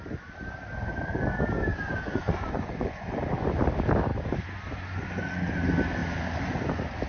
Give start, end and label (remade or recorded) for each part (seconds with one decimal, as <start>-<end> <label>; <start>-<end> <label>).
0.0-1.7 recorded; 1.7-3.0 remade; 3.0-7.1 recorded